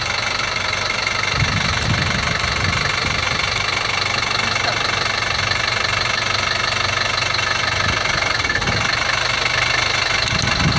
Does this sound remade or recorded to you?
recorded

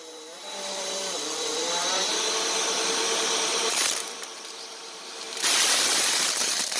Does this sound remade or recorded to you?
remade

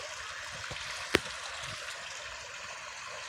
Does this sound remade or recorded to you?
recorded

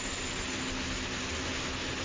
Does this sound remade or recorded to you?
recorded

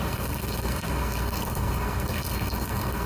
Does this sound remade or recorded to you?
remade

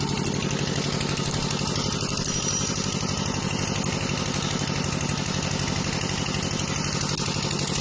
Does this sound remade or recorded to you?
recorded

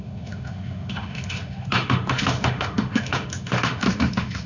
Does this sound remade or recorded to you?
remade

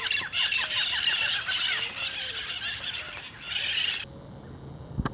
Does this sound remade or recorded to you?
recorded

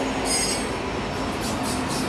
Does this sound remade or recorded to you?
recorded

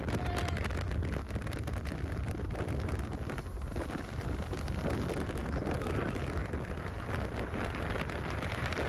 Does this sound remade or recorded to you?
recorded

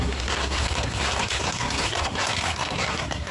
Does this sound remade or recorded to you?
remade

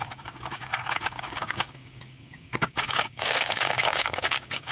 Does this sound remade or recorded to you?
remade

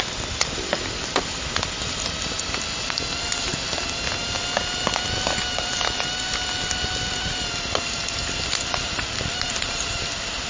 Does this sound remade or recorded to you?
remade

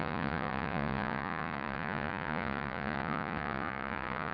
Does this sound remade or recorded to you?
remade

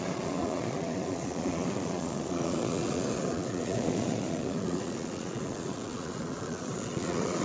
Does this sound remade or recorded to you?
remade